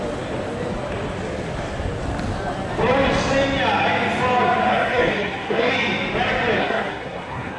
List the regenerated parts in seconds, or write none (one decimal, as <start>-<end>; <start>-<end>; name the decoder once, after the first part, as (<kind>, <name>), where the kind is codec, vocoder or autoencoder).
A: 4.7-5.7 (codec, SNAC); 6.6-7.6